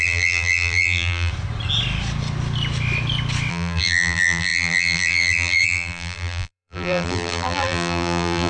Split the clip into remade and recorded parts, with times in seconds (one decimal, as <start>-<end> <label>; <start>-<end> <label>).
0.0-1.3 remade; 1.3-3.5 recorded; 3.5-8.5 remade